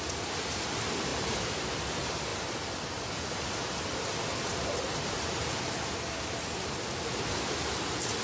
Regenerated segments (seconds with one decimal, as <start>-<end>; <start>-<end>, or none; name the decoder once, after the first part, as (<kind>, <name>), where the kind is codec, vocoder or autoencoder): none